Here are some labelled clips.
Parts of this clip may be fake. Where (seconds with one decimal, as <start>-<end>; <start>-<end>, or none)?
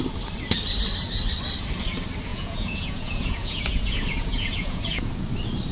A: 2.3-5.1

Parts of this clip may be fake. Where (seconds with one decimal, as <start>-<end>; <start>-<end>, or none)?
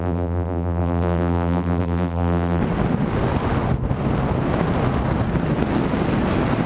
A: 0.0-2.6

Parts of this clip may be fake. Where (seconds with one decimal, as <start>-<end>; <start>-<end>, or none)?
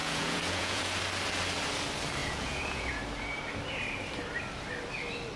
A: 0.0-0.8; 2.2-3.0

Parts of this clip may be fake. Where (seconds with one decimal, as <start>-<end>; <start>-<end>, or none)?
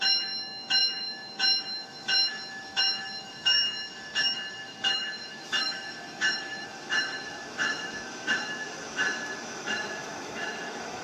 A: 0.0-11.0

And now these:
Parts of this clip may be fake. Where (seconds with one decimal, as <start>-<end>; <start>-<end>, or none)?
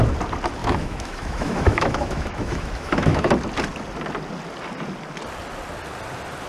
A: 0.6-3.3